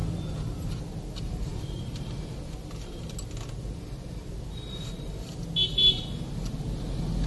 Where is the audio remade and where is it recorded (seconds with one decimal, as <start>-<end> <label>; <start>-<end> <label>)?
0.0-7.3 recorded